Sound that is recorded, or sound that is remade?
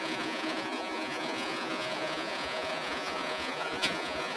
remade